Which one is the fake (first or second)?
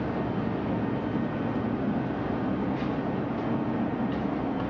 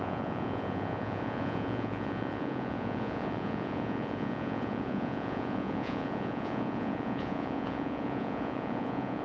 second